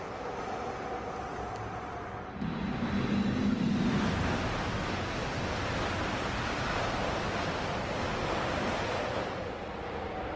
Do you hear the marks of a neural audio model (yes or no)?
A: no